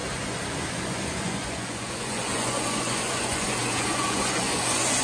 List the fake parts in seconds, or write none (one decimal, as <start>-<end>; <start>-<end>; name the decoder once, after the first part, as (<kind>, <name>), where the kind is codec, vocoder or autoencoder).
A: 0.0-5.0 (vocoder, Vocos)